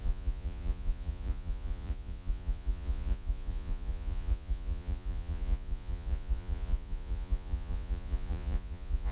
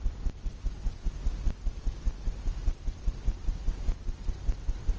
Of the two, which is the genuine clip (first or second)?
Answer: second